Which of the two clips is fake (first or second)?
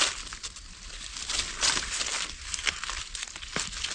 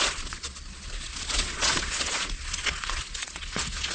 second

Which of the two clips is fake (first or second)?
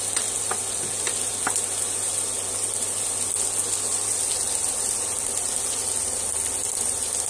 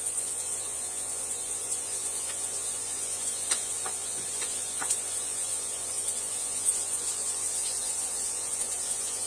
second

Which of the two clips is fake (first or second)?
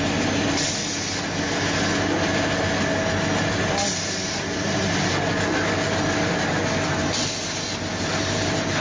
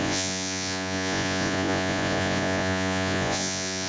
second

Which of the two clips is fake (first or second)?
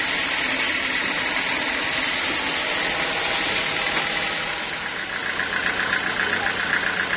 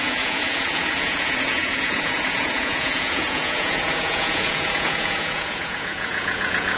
second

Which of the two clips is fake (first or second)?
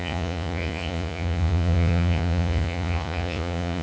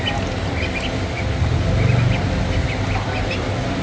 first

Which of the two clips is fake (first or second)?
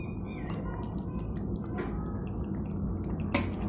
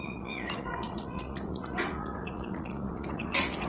second